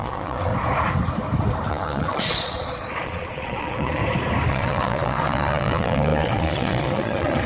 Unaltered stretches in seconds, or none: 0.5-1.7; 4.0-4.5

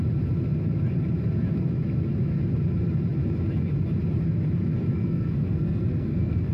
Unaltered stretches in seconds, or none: 0.0-4.9

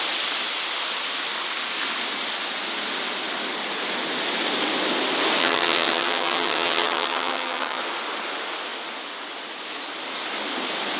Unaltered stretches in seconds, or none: 0.0-5.4; 7.8-11.0

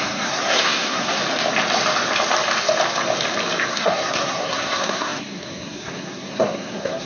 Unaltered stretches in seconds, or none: 1.2-3.7